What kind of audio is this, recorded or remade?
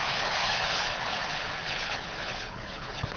remade